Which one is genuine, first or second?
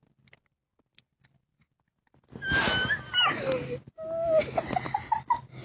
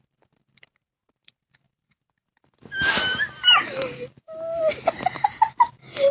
first